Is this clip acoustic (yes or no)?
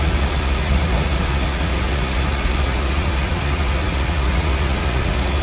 no